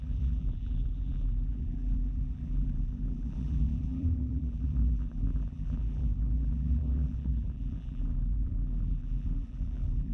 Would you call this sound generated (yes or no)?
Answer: yes